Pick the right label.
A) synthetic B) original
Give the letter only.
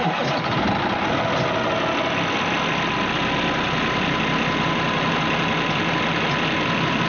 B